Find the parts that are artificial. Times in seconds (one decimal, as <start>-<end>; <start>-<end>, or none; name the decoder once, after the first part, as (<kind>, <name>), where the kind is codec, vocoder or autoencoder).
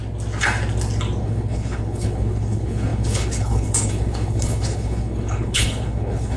1.2-6.4 (codec, HILCodec)